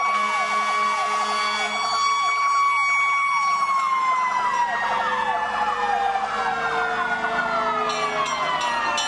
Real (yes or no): yes